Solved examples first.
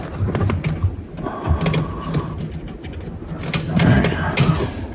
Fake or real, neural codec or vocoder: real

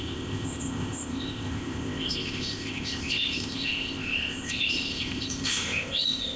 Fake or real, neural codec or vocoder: fake, codec, ZipCodec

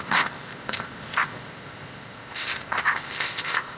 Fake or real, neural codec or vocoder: fake, codec, ZipCodec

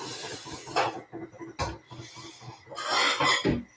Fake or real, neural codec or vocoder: real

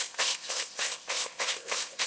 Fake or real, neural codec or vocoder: fake, codec, ZipCodec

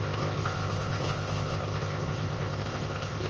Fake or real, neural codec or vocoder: fake, codec, ZipCodec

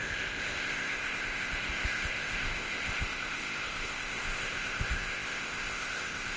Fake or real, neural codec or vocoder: fake, codec, ZipCodec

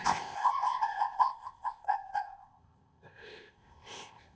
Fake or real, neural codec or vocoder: fake, codec, ZipCodec